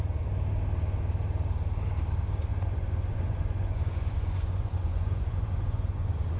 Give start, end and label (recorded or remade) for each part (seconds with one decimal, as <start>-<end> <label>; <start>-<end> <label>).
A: 0.0-2.5 recorded; 2.5-6.4 remade